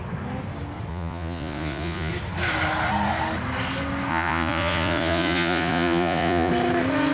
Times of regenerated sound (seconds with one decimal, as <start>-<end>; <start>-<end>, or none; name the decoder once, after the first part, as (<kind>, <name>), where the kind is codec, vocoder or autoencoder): 0.9-2.1 (vocoder, Vocos); 4.1-6.5